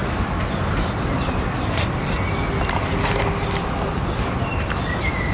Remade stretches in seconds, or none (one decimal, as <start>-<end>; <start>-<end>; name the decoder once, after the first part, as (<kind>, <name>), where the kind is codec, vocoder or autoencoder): none